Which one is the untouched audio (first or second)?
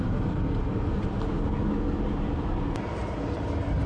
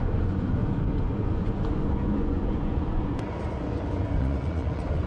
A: first